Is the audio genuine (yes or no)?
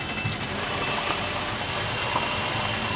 yes